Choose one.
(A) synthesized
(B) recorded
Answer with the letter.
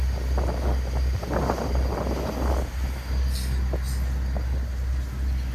B